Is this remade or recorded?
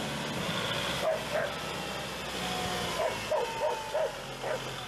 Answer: recorded